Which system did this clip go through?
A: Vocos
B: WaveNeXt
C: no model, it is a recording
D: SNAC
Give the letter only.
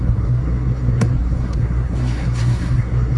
D